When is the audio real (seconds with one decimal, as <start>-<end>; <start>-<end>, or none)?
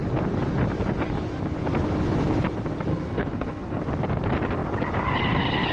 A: 0.0-2.9; 3.8-5.7